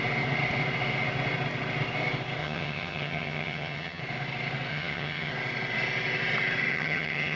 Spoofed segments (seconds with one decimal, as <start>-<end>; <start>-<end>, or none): 2.4-4.0; 4.7-5.3; 6.7-7.4